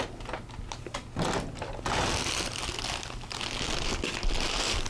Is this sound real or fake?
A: real